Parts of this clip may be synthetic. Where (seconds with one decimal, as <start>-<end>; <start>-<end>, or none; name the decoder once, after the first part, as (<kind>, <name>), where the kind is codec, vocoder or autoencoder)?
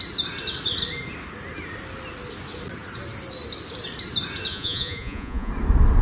4.5-5.5 (vocoder, Vocos)